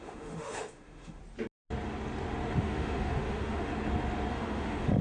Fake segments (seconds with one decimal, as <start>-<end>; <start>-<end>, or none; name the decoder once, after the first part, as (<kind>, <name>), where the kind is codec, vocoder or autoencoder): 0.0-1.2 (autoencoder, DAC-VAE); 2.6-3.7; 4.3-5.0